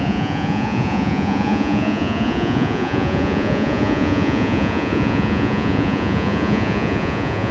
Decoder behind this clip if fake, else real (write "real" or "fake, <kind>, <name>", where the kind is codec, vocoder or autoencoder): fake, vocoder, Vocos